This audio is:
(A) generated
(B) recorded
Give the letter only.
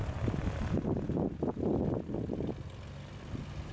B